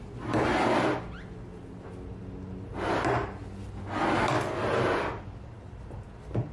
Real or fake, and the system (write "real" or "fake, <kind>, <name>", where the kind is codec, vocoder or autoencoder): real